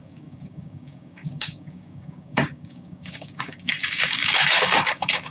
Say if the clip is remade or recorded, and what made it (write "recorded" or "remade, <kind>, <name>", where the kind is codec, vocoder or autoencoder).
remade, codec, DAC